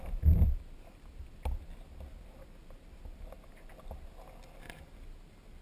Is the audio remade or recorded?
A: recorded